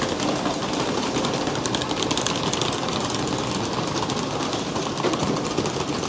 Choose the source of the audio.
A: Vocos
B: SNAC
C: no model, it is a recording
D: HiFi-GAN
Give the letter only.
C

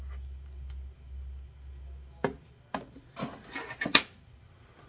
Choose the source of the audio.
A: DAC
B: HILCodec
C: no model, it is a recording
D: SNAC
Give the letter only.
C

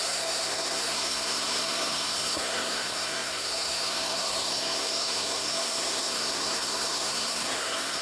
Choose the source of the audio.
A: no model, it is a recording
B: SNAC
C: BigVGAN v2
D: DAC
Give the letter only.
B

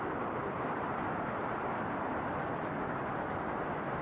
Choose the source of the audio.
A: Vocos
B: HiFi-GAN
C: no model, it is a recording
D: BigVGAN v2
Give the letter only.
C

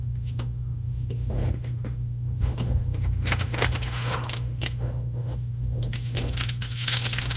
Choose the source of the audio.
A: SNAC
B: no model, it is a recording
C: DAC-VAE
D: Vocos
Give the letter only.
C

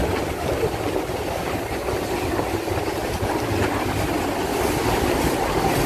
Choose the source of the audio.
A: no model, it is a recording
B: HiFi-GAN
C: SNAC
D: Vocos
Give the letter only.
A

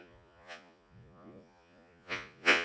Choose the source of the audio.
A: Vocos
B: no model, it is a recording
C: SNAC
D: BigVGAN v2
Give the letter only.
A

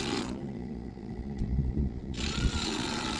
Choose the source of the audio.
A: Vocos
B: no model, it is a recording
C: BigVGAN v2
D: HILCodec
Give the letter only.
A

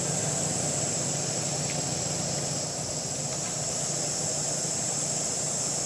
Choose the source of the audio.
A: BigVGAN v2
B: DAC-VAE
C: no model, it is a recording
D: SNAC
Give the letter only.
C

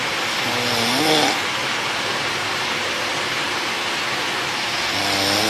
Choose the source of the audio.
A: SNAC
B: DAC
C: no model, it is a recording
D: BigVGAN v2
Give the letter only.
C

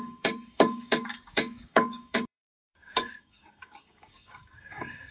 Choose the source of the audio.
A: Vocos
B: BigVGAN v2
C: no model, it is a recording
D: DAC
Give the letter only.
D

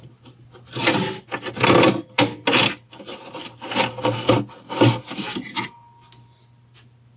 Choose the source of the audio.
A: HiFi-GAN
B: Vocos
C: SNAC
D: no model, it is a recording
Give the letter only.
D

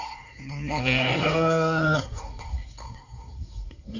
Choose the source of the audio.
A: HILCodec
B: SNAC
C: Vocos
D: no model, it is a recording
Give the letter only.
B